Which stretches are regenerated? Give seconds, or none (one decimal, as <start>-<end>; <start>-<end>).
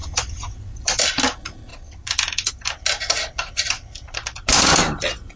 0.0-1.0; 1.7-2.5; 3.2-4.3